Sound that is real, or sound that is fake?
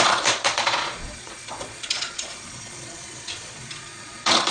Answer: fake